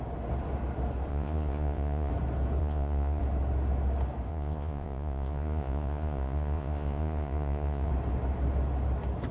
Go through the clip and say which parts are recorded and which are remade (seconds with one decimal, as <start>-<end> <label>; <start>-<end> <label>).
0.0-1.1 recorded; 1.1-2.1 remade; 2.1-2.6 recorded; 2.6-3.2 remade; 3.2-4.3 recorded; 4.3-7.9 remade; 7.9-9.3 recorded